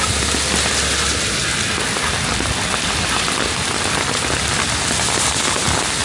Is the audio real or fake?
real